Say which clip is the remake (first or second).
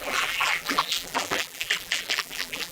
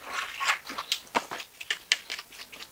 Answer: first